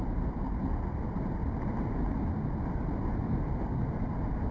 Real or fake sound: real